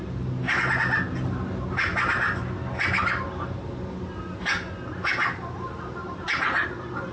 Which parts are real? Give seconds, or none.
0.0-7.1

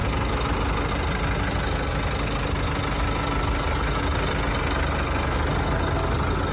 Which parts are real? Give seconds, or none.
0.0-6.5

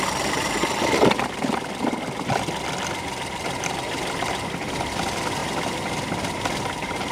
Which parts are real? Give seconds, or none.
0.0-5.4

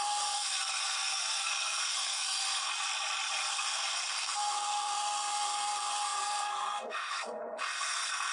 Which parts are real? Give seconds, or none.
2.7-3.5

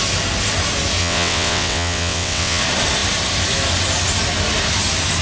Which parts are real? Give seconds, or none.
0.0-1.0; 2.6-5.2